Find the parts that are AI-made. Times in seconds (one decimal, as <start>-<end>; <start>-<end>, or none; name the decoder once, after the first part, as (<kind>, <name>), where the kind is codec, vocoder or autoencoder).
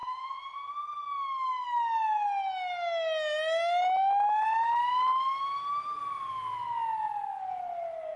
0.0-0.7 (vocoder, Vocos)